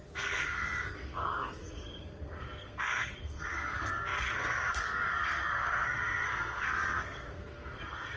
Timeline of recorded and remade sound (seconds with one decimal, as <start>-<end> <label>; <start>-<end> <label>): 0.0-8.2 remade